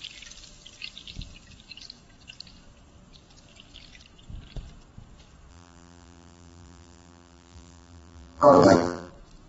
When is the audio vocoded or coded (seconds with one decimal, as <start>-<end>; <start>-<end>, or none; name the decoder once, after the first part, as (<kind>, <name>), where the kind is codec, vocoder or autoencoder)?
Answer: 5.5-9.1 (vocoder, BigVGAN v2)